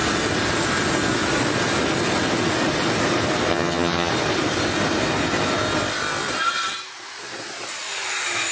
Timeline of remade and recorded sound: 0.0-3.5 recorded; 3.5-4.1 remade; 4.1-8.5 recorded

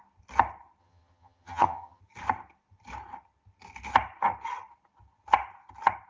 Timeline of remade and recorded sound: 0.0-0.8 recorded; 0.8-2.0 remade; 2.0-6.1 recorded